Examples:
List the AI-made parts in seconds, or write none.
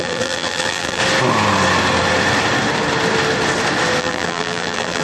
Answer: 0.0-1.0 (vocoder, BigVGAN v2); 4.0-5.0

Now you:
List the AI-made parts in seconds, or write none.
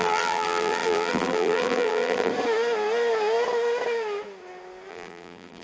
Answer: 0.0-2.3 (vocoder, BigVGAN v2); 4.9-5.6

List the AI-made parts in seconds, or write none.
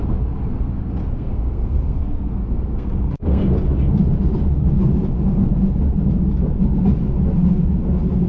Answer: 1.0-3.4 (codec, SNAC)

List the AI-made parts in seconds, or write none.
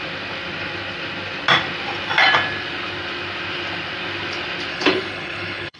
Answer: 4.7-5.8 (codec, HILCodec)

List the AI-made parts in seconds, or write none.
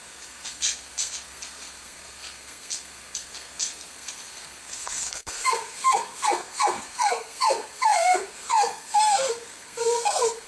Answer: 0.0-10.5 (codec, SNAC)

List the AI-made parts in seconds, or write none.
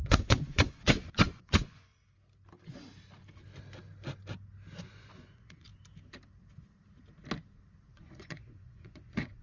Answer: 0.0-1.9 (vocoder, Vocos); 4.8-5.7; 7.9-9.4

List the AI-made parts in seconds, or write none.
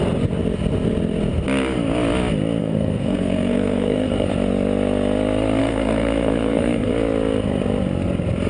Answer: 2.6-4.3 (codec, SNAC); 5.6-6.9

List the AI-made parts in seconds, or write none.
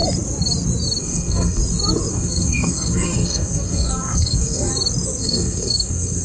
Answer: 1.0-1.6 (codec, SNAC); 2.1-4.7; 5.2-6.2